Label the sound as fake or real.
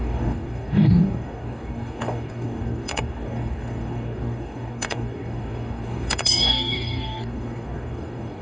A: fake